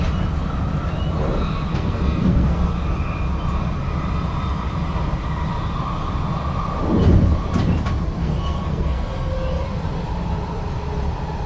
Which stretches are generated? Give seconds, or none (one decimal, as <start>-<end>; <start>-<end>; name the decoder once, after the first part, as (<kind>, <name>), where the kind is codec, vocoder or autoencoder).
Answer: 1.7-2.7 (codec, SNAC); 8.2-9.3